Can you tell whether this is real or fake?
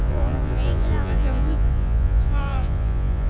fake